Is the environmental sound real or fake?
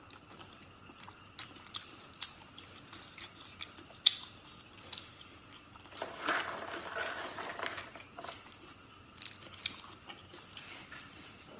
real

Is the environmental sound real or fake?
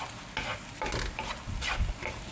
real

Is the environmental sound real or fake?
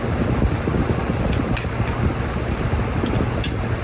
real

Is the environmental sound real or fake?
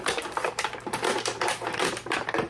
fake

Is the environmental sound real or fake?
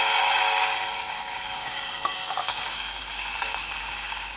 fake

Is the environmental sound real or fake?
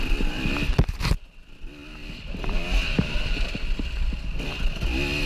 real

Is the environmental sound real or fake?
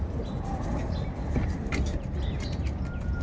real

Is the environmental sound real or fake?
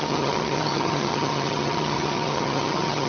fake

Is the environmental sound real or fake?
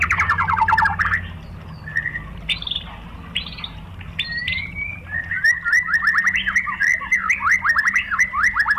real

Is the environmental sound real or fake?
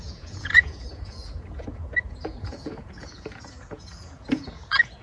fake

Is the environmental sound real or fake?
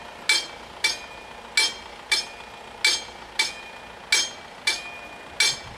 real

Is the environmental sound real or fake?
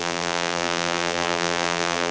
fake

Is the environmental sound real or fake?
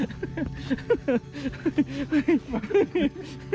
real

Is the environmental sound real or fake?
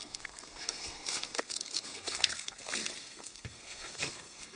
fake